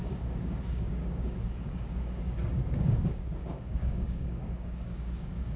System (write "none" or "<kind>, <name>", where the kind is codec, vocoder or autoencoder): codec, DAC